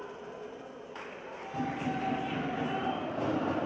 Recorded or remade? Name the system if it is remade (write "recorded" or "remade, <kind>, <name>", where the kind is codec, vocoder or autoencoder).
recorded